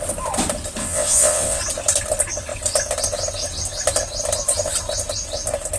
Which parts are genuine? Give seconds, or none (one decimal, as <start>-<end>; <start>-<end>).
0.0-0.8; 1.6-5.8